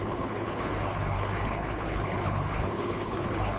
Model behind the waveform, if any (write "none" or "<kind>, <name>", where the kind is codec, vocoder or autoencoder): codec, HILCodec